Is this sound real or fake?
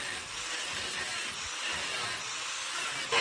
real